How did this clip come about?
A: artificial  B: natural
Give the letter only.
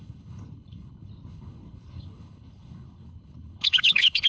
A